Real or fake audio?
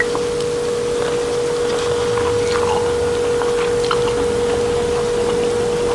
real